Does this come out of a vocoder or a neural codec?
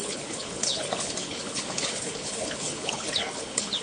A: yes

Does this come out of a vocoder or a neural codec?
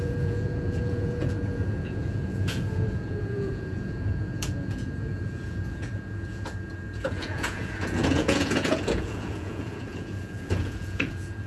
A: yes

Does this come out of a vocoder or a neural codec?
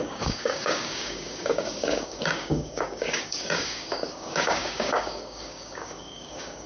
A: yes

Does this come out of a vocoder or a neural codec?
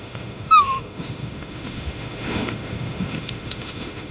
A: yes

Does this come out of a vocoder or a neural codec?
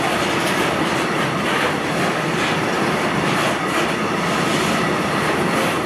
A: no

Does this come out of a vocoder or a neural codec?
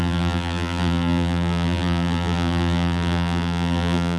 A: yes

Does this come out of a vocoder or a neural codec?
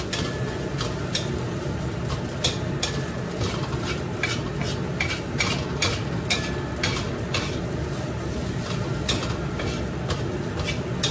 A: no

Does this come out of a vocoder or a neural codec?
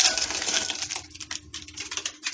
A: no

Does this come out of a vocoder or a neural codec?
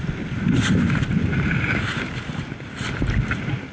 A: no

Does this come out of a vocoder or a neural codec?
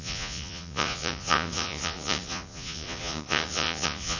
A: yes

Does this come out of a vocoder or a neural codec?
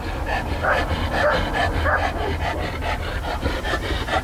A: no